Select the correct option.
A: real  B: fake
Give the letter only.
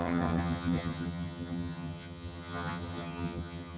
B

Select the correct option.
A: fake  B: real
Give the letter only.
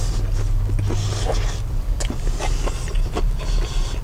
B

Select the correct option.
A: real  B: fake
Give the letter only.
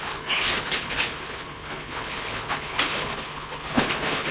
B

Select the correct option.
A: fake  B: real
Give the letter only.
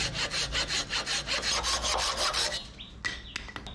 B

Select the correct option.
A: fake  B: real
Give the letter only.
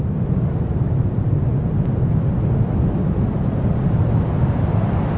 B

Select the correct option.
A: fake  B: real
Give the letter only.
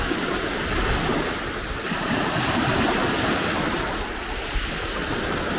B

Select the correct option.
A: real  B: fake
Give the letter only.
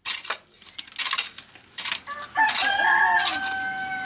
A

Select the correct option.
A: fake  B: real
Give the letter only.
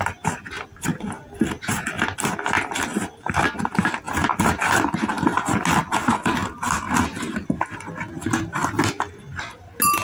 B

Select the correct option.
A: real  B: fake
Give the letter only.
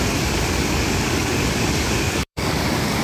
B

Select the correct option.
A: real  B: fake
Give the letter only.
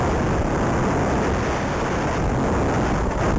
A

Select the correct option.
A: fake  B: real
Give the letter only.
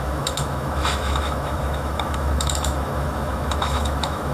A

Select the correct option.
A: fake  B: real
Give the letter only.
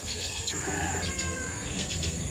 A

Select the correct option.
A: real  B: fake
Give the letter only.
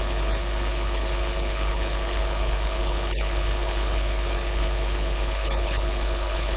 B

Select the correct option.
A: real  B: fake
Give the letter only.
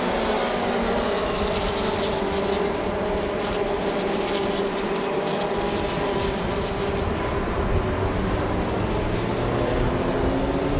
A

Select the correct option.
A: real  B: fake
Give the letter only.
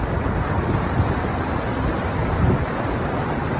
B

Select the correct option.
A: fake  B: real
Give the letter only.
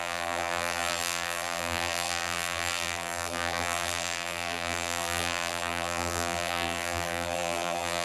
A